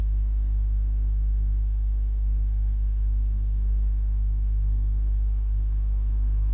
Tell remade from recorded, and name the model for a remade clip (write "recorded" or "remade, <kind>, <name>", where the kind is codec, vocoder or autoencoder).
remade, codec, SNAC